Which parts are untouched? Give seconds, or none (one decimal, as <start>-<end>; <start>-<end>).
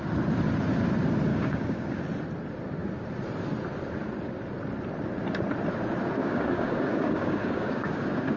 0.0-1.3; 2.0-6.2